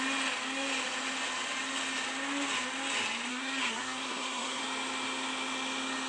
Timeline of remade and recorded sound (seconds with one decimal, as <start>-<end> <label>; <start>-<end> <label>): 0.0-3.3 recorded; 3.3-4.6 remade; 4.6-6.1 recorded